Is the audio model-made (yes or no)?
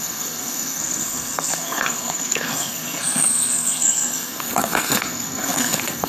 yes